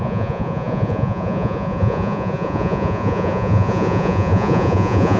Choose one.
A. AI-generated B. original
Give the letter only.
A